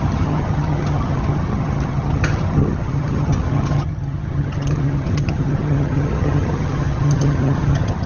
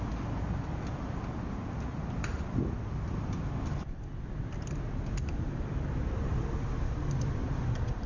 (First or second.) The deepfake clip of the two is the first